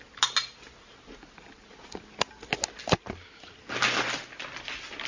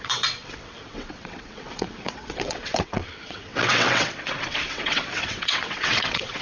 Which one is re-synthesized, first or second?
second